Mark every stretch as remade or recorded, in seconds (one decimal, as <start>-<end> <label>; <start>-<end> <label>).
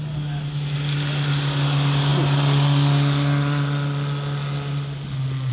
0.0-5.5 recorded